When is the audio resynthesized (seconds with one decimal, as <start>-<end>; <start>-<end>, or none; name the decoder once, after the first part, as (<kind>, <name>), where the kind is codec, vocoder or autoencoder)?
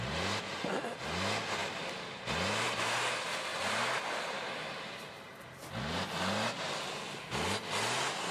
none